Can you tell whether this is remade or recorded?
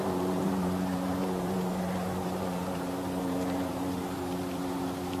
remade